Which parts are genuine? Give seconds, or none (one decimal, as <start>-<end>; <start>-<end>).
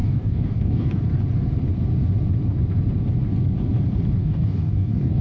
1.0-4.2